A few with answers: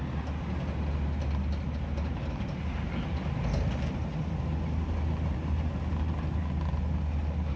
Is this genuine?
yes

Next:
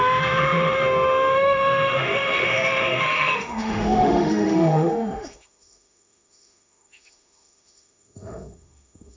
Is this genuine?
no